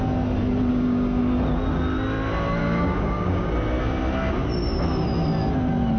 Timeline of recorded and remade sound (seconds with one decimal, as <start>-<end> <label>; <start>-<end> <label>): 0.0-0.7 recorded; 0.7-1.2 remade; 1.2-2.6 recorded; 2.6-3.5 remade; 3.5-6.0 recorded